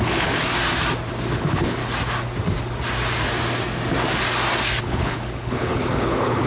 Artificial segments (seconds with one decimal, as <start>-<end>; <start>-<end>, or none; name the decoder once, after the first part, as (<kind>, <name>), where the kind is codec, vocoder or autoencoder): 0.0-0.4 (codec, HILCodec); 1.4-1.8; 4.8-6.5